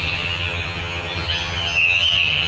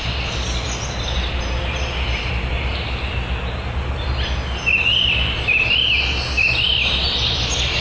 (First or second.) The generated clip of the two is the first